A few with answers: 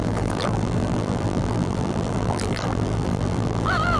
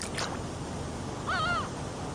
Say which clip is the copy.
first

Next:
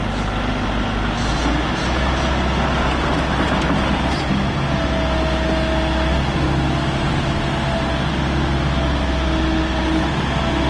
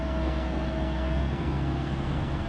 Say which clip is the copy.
second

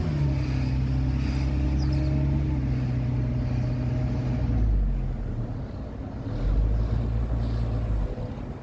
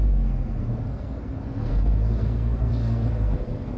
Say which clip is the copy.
second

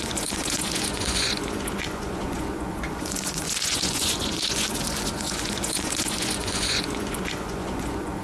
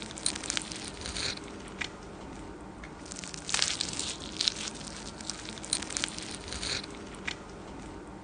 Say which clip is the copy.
first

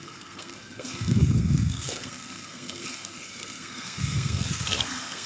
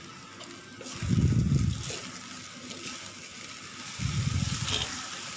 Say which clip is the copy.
first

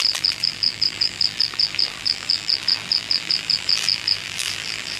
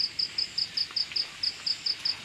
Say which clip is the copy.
first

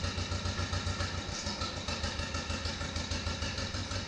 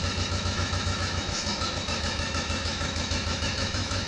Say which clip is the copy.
second